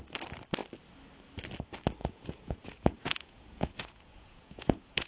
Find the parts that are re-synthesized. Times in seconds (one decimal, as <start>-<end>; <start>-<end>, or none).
2.0-5.1